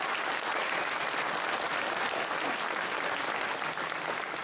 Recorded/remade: recorded